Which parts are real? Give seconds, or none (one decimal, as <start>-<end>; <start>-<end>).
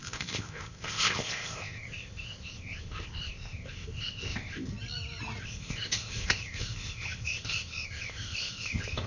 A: 4.7-5.4